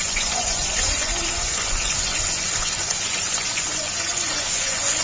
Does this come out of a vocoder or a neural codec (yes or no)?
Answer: yes